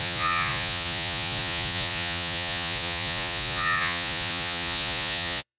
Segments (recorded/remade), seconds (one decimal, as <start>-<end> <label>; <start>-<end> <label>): 0.0-5.6 remade